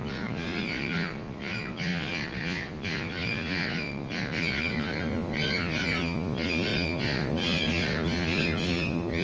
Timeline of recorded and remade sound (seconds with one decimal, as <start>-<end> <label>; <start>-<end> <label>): 0.0-9.2 remade